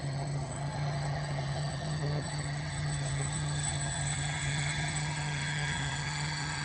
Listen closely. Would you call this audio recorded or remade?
remade